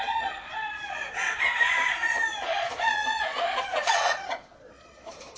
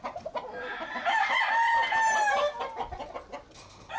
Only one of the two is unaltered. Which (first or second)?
second